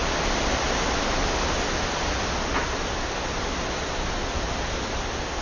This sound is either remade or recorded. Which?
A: recorded